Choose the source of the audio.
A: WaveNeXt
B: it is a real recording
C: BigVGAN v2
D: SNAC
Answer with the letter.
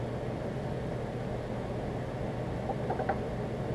B